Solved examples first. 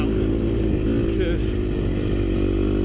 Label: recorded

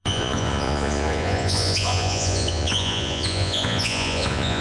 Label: remade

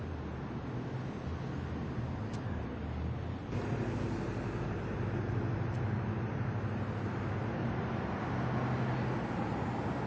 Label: recorded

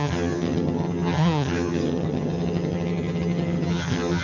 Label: remade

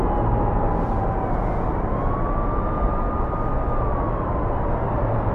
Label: recorded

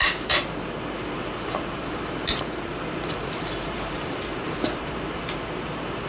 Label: remade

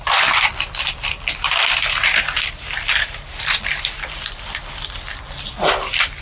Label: remade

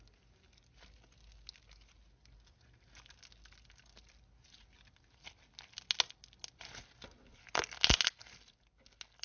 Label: recorded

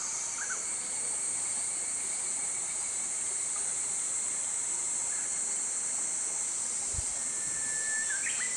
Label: recorded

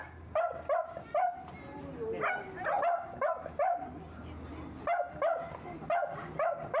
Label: recorded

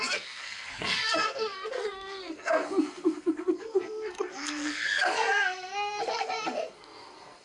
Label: remade